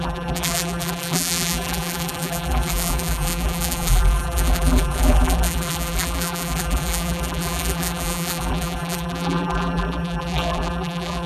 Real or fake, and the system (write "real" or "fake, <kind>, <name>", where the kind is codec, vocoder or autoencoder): fake, vocoder, BigVGAN v2